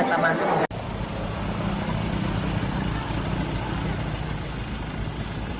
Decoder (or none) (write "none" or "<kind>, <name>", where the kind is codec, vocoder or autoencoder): none